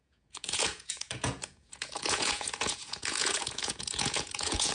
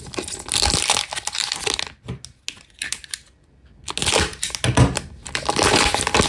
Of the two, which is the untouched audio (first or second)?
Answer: second